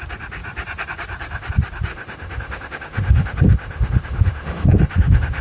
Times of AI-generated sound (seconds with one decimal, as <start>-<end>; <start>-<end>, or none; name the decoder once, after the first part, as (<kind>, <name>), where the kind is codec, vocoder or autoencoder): 1.9-5.4 (autoencoder, DAC-VAE)